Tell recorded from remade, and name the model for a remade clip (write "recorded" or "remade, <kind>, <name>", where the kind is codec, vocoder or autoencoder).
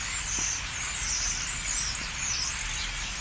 recorded